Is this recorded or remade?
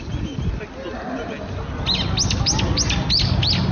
recorded